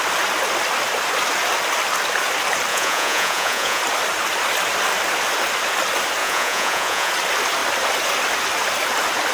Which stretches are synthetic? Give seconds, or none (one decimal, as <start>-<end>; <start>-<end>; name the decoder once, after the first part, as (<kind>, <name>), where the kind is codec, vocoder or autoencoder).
2.7-3.8 (vocoder, Vocos); 6.2-7.1